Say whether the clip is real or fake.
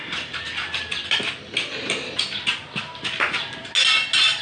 real